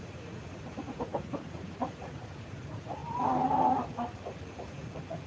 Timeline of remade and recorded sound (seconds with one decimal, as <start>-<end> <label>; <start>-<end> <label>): 0.0-3.0 remade; 3.0-5.3 recorded